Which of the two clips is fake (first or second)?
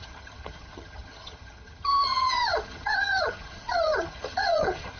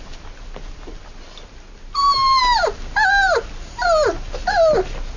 first